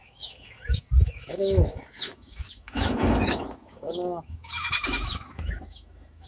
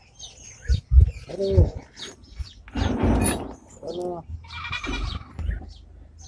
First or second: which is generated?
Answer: first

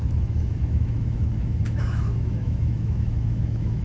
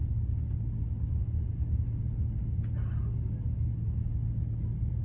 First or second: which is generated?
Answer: first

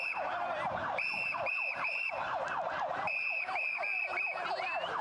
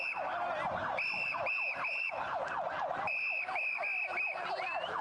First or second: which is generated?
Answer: first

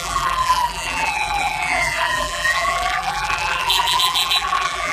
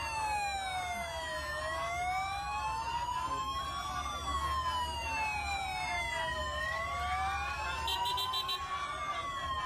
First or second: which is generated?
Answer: first